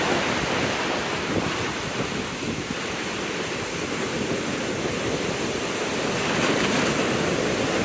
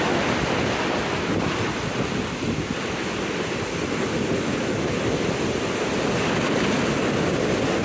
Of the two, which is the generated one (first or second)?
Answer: first